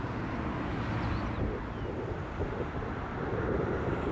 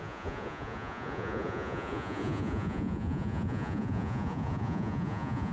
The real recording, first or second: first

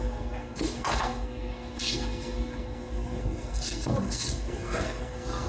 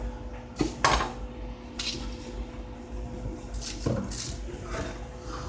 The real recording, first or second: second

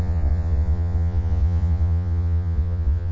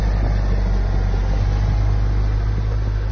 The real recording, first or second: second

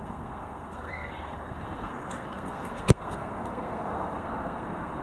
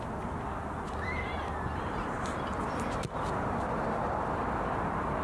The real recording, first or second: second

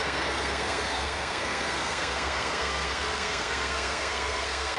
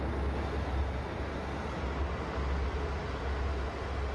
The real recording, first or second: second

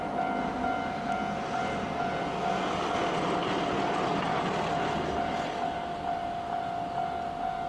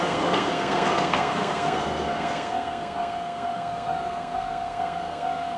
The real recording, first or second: first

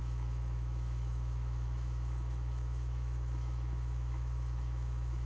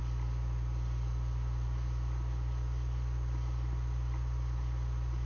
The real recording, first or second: second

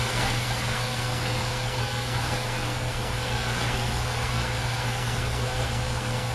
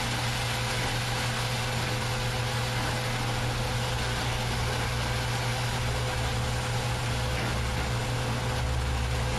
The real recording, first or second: second